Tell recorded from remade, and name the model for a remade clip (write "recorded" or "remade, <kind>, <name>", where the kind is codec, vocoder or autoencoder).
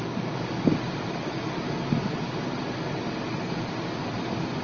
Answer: recorded